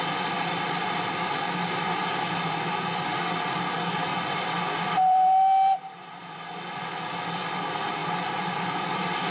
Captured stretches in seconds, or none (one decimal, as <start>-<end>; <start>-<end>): 0.0-9.3